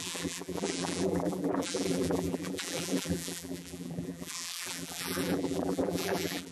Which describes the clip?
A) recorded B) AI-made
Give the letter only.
B